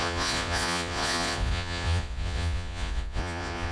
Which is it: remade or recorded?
remade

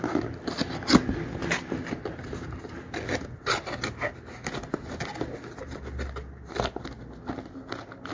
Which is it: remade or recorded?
recorded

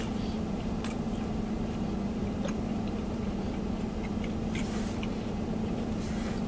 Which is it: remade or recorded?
recorded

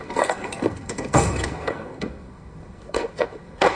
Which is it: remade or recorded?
remade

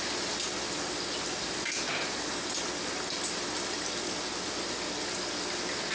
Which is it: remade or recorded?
recorded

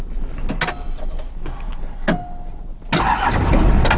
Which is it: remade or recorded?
recorded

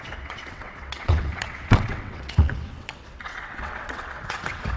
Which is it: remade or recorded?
remade